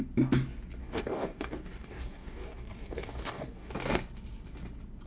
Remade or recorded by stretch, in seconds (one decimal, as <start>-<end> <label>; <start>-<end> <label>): 0.0-0.8 recorded; 0.8-3.7 remade; 3.7-5.1 recorded